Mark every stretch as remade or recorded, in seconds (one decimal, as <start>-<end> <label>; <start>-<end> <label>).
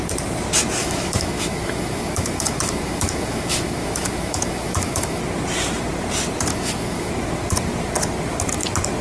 0.0-0.8 recorded; 0.8-5.2 remade; 5.2-6.5 recorded; 6.5-7.1 remade; 7.1-9.0 recorded